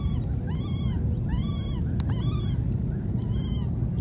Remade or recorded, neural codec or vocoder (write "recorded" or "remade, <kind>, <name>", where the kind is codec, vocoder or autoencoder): recorded